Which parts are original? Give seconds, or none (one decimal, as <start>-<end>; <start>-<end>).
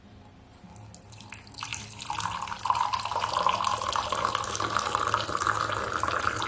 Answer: 0.0-6.5